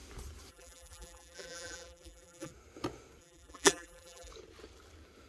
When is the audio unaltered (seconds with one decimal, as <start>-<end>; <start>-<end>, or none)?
0.0-0.5; 2.5-3.2; 4.3-5.3